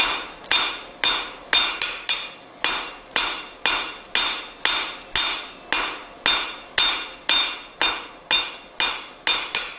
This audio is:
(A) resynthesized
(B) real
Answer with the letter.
B